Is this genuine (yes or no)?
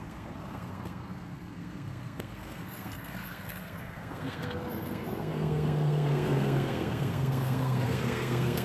no